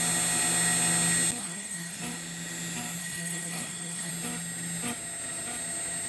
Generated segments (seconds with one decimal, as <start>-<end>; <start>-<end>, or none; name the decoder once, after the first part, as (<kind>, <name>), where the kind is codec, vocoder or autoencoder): 1.4-2.0 (codec, SNAC); 3.0-4.1